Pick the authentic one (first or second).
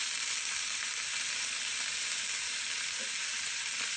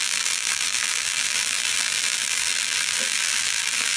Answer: first